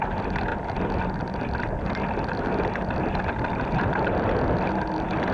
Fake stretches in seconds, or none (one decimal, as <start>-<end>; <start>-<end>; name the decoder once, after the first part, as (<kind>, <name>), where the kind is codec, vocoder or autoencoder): none

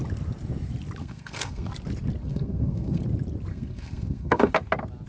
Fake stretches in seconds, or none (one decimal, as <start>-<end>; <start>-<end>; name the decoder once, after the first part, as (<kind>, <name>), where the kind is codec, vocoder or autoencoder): 1.0-1.7 (codec, SNAC); 2.2-3.0; 3.5-4.5

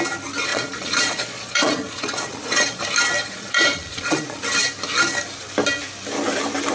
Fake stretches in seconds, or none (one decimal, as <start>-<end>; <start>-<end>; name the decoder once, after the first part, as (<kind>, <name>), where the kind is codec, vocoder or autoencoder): 0.5-2.8 (vocoder, Vocos); 3.2-4.4

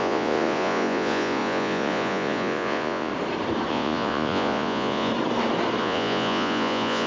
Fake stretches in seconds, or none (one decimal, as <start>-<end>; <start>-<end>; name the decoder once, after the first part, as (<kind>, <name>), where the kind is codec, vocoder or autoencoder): 0.0-3.1 (vocoder, Vocos); 3.7-5.1; 5.8-7.1

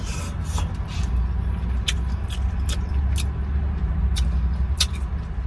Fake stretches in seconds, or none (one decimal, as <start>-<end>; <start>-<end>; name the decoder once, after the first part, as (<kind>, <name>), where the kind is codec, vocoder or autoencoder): none

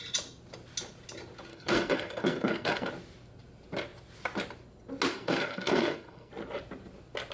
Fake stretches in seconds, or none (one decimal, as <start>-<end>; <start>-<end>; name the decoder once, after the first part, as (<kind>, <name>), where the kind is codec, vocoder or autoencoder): 1.5-2.9 (codec, SNAC); 5.1-6.3